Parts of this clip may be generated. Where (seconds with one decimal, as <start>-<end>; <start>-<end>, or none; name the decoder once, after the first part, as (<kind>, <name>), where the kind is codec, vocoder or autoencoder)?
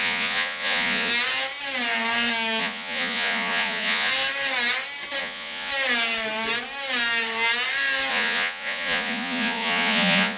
0.0-1.1 (vocoder, Vocos); 2.6-4.1; 5.2-5.7; 8.1-10.4